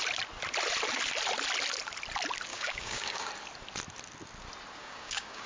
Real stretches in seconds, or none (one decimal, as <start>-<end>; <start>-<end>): 0.0-2.5; 3.3-4.8